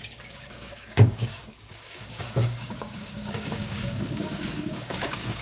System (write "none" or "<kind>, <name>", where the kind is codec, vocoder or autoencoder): codec, DAC